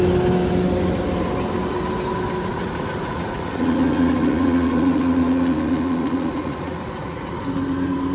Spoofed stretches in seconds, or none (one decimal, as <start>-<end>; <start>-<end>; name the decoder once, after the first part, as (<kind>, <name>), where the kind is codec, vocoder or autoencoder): 2.5-7.4 (vocoder, Vocos)